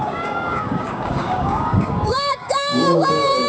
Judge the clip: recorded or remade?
remade